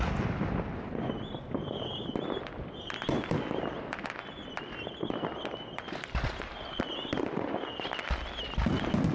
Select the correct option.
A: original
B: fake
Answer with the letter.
A